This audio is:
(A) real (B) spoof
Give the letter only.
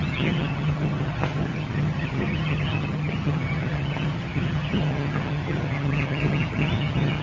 B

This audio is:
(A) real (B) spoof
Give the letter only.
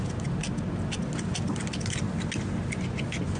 A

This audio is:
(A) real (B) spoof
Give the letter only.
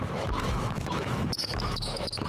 B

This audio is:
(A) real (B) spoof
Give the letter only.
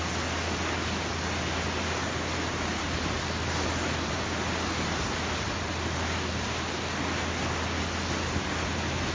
A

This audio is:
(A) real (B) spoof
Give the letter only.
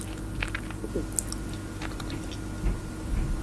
A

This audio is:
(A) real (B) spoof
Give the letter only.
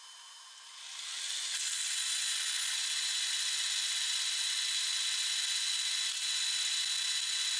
A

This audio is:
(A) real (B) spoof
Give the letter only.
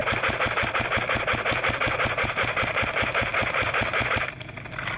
A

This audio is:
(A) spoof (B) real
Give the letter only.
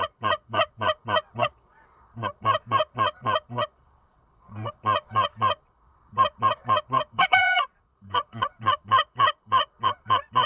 A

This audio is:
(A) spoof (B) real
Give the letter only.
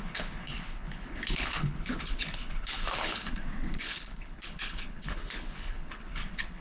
A